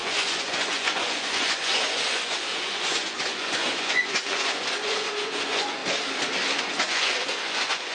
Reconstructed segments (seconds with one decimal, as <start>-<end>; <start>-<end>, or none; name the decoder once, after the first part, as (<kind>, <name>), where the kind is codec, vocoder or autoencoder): 0.0-5.8 (vocoder, Vocos); 6.6-7.9